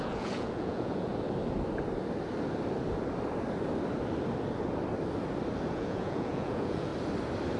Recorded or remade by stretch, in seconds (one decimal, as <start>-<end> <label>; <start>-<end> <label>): 0.0-1.1 remade; 1.1-5.7 recorded; 5.7-6.9 remade; 6.9-7.6 recorded